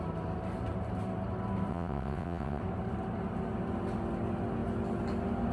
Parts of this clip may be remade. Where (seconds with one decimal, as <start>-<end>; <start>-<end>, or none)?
1.7-2.6